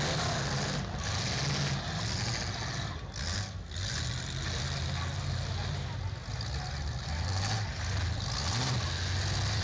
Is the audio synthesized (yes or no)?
no